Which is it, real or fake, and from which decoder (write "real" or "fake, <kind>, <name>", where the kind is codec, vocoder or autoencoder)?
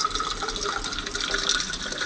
real